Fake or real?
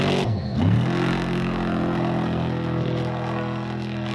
fake